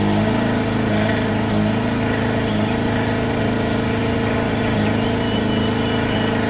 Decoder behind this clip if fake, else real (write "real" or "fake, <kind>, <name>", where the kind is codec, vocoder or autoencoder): real